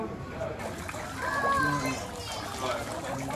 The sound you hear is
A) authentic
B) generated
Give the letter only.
A